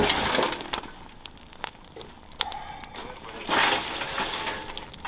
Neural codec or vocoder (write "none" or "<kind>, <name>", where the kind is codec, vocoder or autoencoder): none